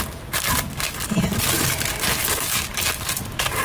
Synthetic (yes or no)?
no